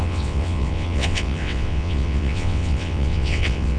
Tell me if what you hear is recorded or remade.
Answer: remade